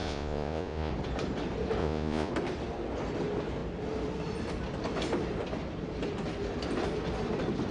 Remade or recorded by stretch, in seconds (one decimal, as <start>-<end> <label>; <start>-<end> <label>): 0.0-0.9 remade; 0.9-1.8 recorded; 1.8-2.3 remade; 2.3-7.7 recorded